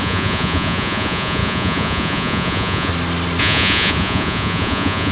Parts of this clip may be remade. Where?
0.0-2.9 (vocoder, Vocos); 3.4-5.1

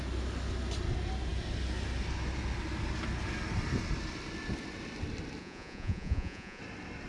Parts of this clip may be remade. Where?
5.4-6.6 (vocoder, Vocos)

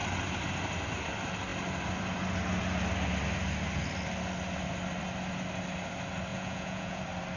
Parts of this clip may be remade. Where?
6.3-7.0 (vocoder, Vocos)

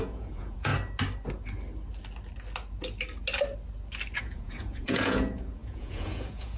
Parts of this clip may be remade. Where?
0.0-0.7 (vocoder, Vocos); 4.2-6.6

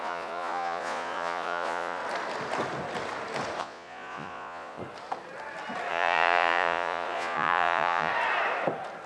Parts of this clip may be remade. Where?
0.0-2.0 (vocoder, Vocos); 3.6-4.8; 5.9-8.1

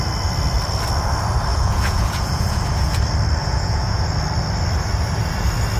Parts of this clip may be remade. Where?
1.5-3.0 (vocoder, Vocos); 3.4-4.1